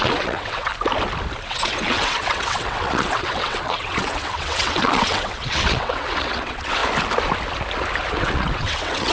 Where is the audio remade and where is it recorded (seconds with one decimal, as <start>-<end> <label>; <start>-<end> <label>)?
0.0-0.7 remade; 0.7-1.4 recorded; 1.4-6.8 remade; 6.8-8.1 recorded; 8.1-9.1 remade